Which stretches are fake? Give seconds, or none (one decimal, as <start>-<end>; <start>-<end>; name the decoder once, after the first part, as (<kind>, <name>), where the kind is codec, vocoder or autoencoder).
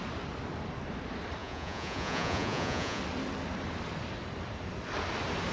1.4-3.0 (vocoder, Vocos)